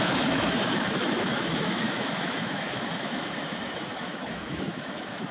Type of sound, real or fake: fake